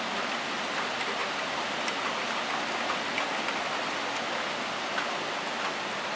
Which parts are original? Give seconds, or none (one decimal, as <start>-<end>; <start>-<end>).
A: 0.0-6.2